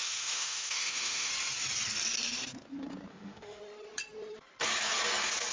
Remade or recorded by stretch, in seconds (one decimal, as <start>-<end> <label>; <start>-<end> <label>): 0.0-1.3 remade; 1.3-3.1 recorded; 3.1-3.6 remade; 3.6-5.5 recorded